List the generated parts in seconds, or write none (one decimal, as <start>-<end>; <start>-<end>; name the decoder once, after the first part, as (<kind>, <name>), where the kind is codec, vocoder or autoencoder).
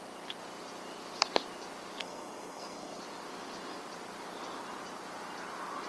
2.0-3.0 (codec, SNAC)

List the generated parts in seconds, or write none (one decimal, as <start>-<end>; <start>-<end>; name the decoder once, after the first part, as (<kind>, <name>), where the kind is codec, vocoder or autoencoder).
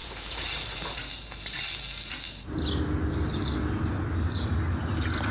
0.0-1.7 (vocoder, BigVGAN v2)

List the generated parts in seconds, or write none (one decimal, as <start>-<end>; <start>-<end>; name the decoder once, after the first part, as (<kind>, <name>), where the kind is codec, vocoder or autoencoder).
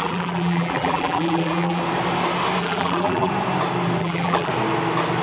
0.0-1.8 (vocoder, BigVGAN v2); 2.6-3.3; 4.0-4.5